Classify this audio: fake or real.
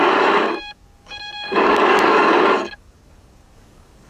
fake